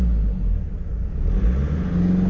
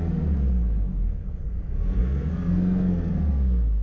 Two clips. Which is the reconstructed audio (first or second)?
second